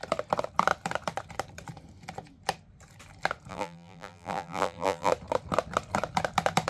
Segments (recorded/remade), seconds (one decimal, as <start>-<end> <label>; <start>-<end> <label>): 0.0-3.5 recorded; 3.5-5.1 remade; 5.1-6.7 recorded